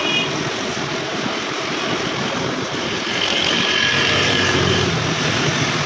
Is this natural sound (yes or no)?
no